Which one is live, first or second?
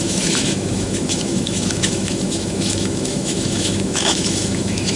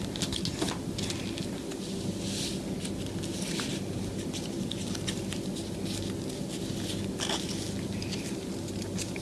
second